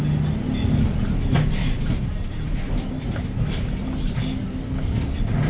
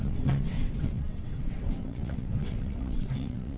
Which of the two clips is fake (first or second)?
second